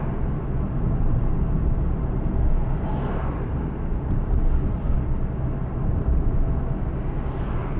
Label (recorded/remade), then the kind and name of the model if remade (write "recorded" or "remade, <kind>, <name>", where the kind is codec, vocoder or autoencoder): recorded